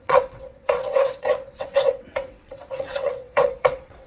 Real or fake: fake